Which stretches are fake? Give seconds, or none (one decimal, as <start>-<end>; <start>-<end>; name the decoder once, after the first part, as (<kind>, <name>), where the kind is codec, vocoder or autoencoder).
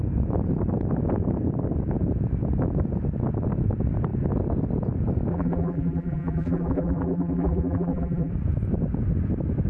5.3-8.3 (vocoder, BigVGAN v2)